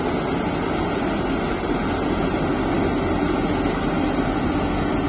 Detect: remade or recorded recorded